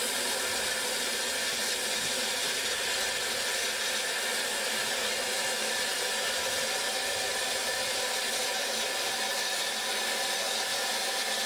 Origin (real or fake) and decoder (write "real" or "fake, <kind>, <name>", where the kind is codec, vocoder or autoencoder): real